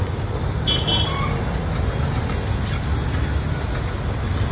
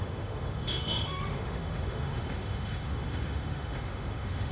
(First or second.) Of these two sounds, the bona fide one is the first